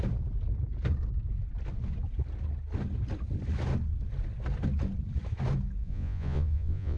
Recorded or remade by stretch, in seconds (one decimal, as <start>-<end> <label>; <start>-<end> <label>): 0.0-5.8 recorded; 5.8-7.0 remade

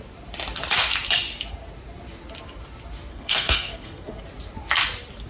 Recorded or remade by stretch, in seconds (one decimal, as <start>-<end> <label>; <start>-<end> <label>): 0.0-3.1 recorded; 3.1-4.2 remade; 4.2-5.3 recorded

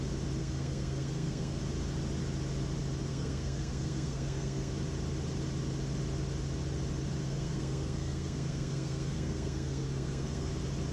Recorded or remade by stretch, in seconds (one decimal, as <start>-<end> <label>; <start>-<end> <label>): 0.0-0.4 recorded; 0.4-1.6 remade; 1.6-3.1 recorded; 3.1-4.7 remade; 4.7-7.2 recorded; 7.2-10.5 remade; 10.5-10.9 recorded

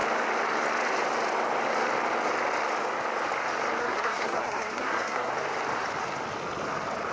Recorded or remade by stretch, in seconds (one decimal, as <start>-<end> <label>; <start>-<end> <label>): 0.0-3.8 recorded; 3.8-5.3 remade; 5.3-7.1 recorded

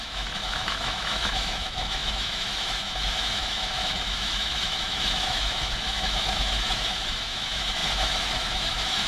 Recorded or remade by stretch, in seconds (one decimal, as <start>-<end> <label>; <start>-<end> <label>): 0.0-9.1 remade

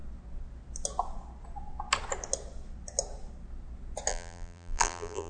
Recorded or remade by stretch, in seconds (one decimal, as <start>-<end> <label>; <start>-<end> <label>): 0.0-4.1 recorded; 4.1-5.3 remade

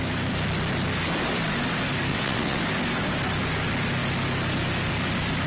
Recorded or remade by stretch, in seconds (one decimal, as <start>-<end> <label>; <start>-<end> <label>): 0.0-2.1 recorded; 2.1-2.6 remade; 2.6-5.5 recorded